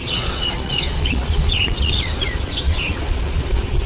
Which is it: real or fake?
fake